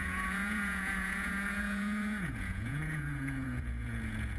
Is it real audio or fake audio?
fake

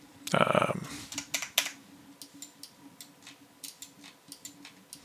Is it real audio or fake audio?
real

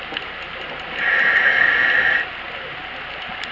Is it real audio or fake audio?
real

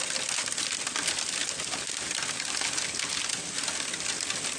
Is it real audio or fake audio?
real